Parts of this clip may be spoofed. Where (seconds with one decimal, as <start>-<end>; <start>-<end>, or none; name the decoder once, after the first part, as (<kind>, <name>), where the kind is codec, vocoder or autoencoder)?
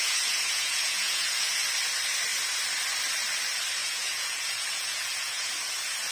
0.0-1.5 (vocoder, Vocos); 3.8-5.5